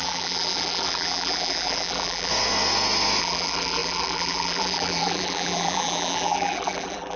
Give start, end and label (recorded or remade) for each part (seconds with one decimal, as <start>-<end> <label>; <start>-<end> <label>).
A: 0.0-2.3 remade; 2.3-3.2 recorded; 3.2-7.2 remade